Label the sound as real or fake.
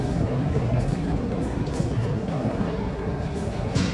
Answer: fake